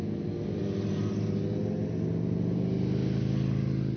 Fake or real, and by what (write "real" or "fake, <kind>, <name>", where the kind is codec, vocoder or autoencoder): real